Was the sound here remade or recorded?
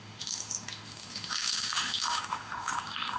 remade